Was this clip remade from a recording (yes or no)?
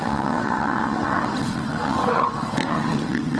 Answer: yes